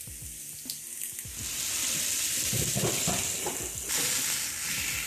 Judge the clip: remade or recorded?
recorded